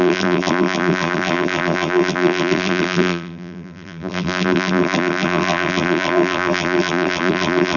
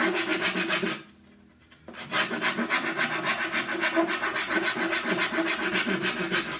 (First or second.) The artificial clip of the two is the first